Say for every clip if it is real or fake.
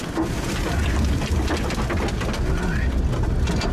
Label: real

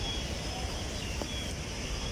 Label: real